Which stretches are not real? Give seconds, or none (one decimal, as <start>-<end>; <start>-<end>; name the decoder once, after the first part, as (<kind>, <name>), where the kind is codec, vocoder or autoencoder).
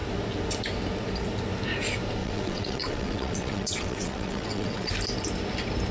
2.2-4.9 (vocoder, WaveNeXt)